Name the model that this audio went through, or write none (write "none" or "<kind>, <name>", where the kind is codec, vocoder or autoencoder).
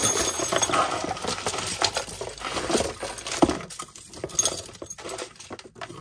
none